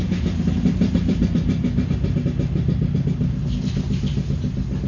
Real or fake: real